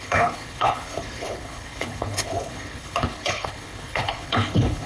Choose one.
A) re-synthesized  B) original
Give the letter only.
A